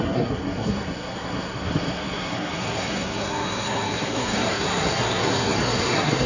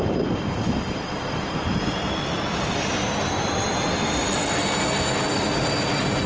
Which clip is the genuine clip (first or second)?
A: second